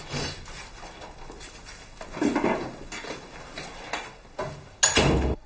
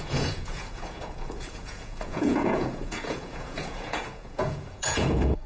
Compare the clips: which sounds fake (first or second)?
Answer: second